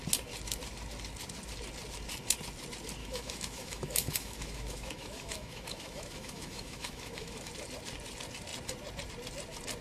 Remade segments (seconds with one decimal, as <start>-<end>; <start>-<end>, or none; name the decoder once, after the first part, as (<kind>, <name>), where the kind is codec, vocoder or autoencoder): 3.0-7.5 (autoencoder, DAC-VAE)